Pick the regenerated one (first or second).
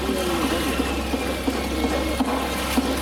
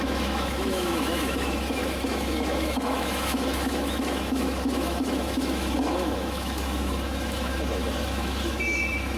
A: second